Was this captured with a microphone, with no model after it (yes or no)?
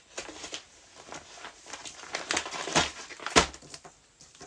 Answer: yes